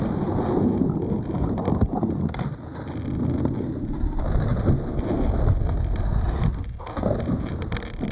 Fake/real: real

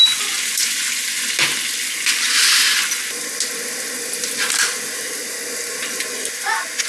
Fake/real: real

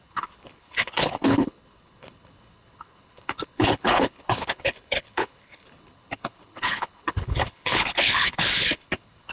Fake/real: fake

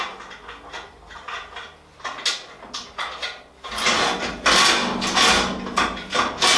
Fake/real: real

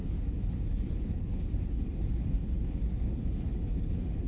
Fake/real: fake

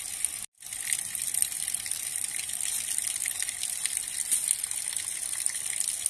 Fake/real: real